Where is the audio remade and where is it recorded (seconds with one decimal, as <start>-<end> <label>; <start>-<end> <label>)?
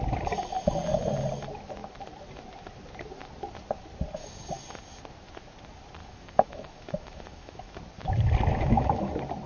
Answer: 0.0-6.0 recorded; 6.0-7.7 remade; 7.7-8.5 recorded; 8.5-9.1 remade; 9.1-9.5 recorded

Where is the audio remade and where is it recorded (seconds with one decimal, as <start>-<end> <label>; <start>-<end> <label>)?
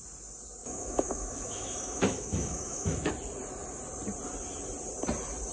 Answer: 0.0-0.6 recorded; 0.6-3.1 remade; 3.1-5.5 recorded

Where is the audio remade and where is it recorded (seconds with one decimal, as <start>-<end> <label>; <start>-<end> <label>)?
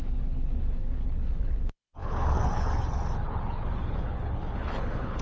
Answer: 0.0-5.2 remade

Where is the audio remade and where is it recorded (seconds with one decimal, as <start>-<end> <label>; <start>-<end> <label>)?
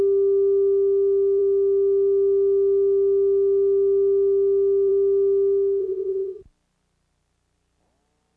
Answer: 0.0-5.8 recorded; 5.8-6.4 remade; 6.4-8.4 recorded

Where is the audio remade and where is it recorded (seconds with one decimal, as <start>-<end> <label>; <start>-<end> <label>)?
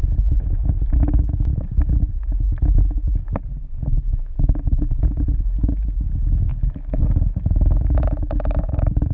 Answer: 0.0-3.5 recorded; 3.5-5.0 remade; 5.0-6.5 recorded; 6.5-7.0 remade; 7.0-9.1 recorded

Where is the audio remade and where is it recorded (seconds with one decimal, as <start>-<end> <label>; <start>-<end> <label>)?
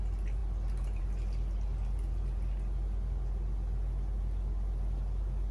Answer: 0.0-5.5 recorded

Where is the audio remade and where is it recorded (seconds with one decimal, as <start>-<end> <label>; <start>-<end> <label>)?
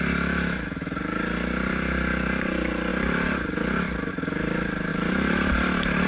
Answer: 0.0-4.9 recorded; 4.9-5.5 remade; 5.5-6.1 recorded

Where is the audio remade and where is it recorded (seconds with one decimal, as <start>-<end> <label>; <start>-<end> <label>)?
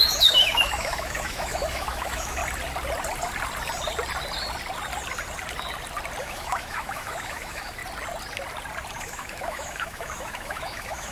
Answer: 0.0-2.4 remade; 2.4-6.2 recorded; 6.2-7.8 remade; 7.8-9.0 recorded; 9.0-11.1 remade